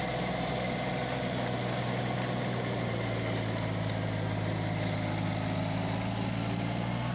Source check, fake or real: real